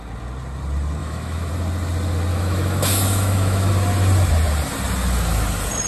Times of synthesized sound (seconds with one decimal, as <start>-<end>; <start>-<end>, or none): 1.0-1.5; 2.3-3.7